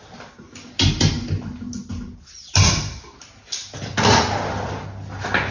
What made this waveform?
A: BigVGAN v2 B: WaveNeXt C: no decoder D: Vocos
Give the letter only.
C